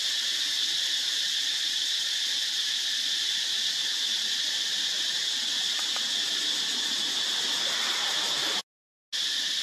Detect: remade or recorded recorded